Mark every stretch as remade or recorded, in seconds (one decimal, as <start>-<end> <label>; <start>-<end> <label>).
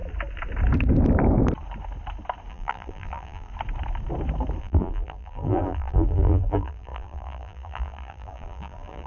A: 0.0-2.5 recorded; 2.5-3.5 remade; 3.5-4.6 recorded; 4.6-9.1 remade